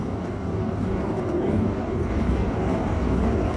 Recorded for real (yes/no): no